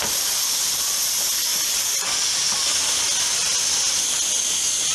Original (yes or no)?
yes